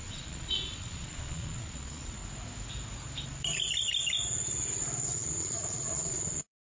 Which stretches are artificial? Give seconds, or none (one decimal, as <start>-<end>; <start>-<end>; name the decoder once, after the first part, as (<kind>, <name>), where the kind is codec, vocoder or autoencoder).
0.0-2.2 (vocoder, Vocos); 5.1-6.7